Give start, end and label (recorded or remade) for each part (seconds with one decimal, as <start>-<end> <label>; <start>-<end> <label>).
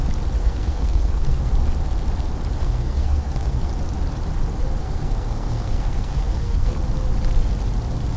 0.0-0.4 recorded; 0.4-1.5 remade; 1.5-2.6 recorded; 2.6-3.7 remade; 3.7-4.8 recorded; 4.8-6.8 remade; 6.8-8.2 recorded